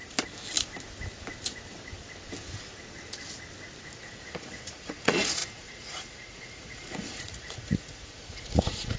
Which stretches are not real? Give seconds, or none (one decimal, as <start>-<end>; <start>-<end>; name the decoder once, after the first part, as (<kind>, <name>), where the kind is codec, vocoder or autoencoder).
4.0-9.0 (vocoder, Vocos)